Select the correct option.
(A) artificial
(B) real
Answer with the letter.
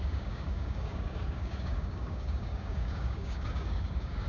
A